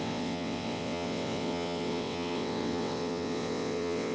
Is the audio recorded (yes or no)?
no